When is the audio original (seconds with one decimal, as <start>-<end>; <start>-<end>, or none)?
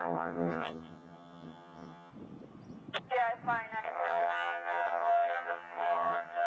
2.1-3.8